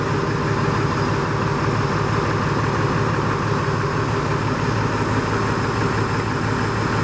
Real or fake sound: real